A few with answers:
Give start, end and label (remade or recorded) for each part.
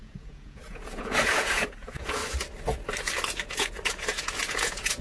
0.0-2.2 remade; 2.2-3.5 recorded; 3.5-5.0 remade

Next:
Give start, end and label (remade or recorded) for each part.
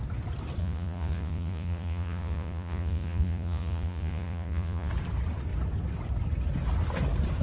0.0-0.6 recorded; 0.6-4.9 remade; 4.9-7.4 recorded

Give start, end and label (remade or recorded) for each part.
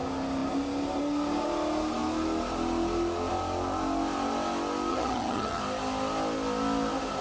0.0-4.9 recorded; 4.9-5.6 remade; 5.6-7.2 recorded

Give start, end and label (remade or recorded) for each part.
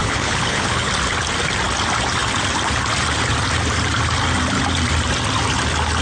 0.0-0.9 remade; 0.9-6.0 recorded